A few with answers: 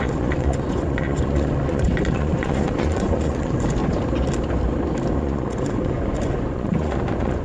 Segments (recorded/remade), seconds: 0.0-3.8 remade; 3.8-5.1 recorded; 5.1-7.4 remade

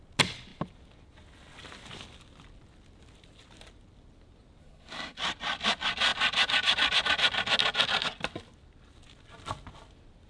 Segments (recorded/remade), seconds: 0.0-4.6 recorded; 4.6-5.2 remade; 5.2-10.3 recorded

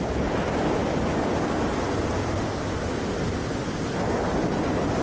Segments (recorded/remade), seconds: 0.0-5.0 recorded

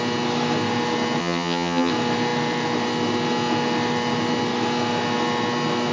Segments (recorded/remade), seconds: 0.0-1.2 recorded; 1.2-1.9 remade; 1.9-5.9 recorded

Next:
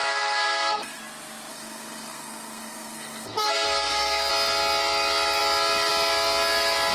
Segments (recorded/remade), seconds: 0.0-1.0 remade; 1.0-1.5 recorded; 1.5-4.3 remade; 4.3-6.9 recorded

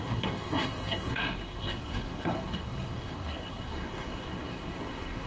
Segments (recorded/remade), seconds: 0.0-5.3 remade